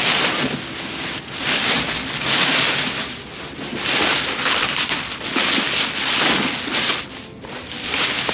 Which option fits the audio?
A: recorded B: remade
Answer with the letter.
A